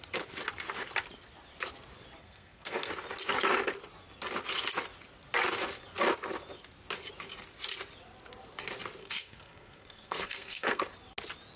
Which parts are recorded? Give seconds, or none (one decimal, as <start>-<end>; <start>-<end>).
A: 0.0-2.2; 2.9-9.0; 10.8-11.6